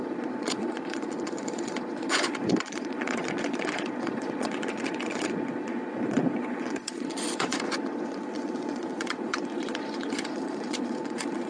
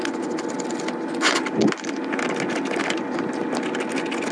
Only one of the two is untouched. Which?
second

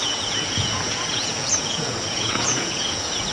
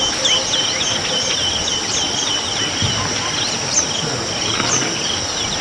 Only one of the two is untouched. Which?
second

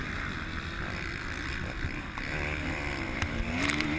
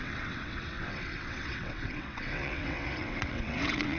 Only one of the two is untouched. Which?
first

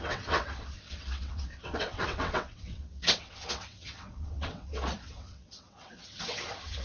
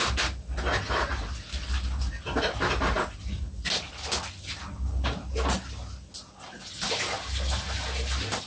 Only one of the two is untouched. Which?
second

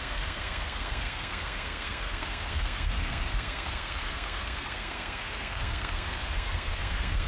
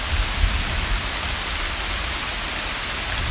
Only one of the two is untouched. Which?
second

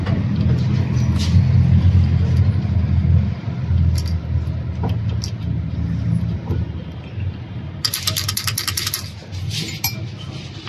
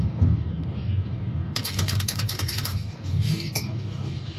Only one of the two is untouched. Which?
first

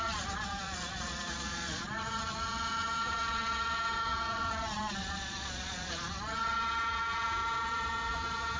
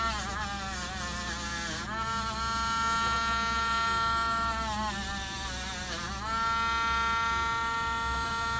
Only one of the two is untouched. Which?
second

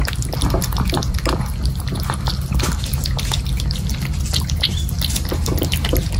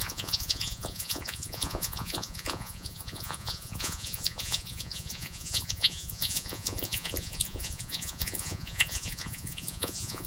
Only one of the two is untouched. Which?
first